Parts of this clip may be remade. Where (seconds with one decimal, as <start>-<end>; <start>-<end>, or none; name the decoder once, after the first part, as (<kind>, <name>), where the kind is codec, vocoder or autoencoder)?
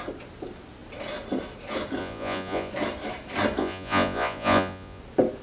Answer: 2.0-2.7 (vocoder, Vocos); 3.6-5.0